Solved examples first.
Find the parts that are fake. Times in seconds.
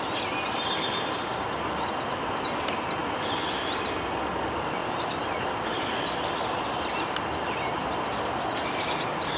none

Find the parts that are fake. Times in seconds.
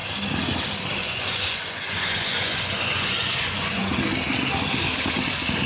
1.0-3.9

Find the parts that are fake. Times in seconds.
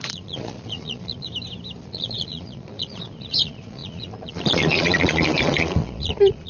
0.0-1.3; 1.8-6.5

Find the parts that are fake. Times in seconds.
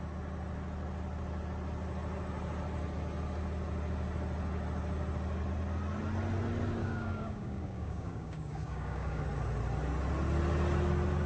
6.8-9.2